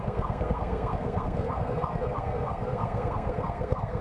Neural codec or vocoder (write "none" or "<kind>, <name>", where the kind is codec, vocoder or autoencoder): codec, SNAC